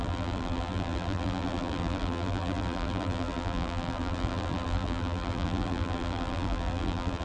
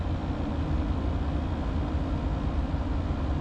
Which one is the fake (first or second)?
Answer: first